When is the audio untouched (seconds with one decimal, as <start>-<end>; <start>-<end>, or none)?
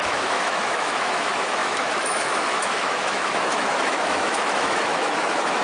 none